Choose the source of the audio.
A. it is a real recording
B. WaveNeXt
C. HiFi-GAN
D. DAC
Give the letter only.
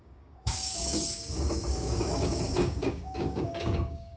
D